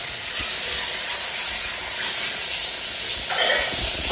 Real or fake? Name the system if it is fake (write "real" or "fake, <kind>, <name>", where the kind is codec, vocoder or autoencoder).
real